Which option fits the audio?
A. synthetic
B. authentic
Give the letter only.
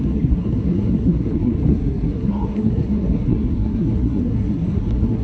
A